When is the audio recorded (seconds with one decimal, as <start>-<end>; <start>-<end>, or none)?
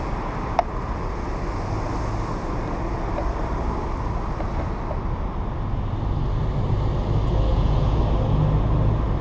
0.0-7.5; 8.0-9.2